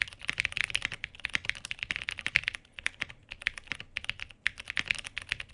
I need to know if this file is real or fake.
real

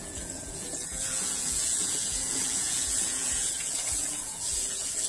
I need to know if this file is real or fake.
fake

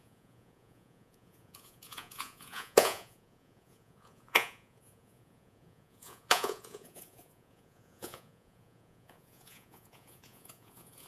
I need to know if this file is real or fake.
fake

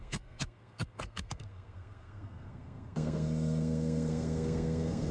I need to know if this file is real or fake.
fake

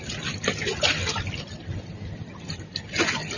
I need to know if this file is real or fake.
real